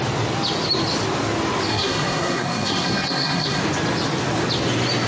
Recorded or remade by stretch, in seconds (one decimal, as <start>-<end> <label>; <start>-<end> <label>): 0.0-1.7 recorded; 1.7-3.6 remade; 3.6-5.1 recorded